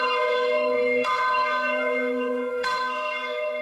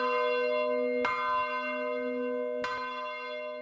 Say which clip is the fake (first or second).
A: first